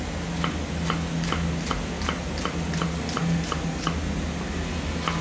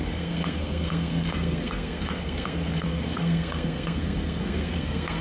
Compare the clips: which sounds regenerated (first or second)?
second